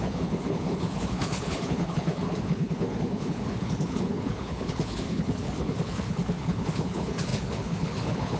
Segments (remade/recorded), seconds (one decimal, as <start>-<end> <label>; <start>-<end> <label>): 0.0-8.4 remade